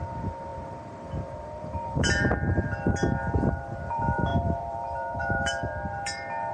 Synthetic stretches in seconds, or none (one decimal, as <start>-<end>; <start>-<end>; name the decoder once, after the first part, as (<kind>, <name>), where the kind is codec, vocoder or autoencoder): 0.0-6.5 (vocoder, BigVGAN v2)

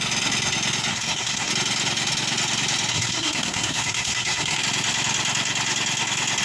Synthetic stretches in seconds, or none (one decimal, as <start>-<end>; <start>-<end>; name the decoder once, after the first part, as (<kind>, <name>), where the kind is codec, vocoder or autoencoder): 0.9-1.5 (codec, SNAC); 2.9-4.6

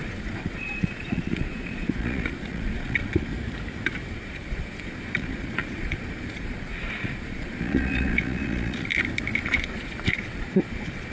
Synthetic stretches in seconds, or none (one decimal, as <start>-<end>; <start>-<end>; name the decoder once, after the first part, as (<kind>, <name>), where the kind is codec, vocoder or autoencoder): 0.0-3.3 (vocoder, Vocos); 4.1-8.9; 9.4-11.1

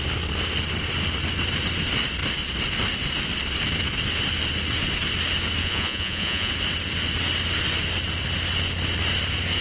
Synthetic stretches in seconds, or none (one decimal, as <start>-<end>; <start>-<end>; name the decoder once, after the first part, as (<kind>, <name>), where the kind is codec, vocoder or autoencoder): 5.6-6.5 (vocoder, Vocos)

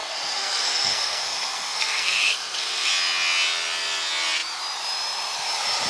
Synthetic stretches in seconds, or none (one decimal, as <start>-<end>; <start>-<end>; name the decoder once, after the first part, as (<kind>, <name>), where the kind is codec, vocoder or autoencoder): 0.0-2.9 (codec, SNAC)

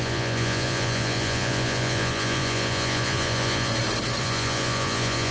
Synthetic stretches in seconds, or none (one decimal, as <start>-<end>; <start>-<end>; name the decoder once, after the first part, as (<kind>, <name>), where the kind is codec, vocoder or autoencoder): 0.0-3.7 (vocoder, Vocos); 4.2-5.3

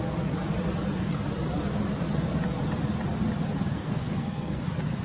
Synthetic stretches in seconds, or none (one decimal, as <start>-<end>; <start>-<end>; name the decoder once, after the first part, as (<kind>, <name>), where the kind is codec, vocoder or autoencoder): 3.7-4.6 (codec, SNAC)